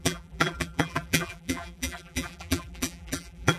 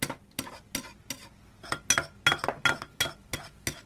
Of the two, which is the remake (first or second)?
first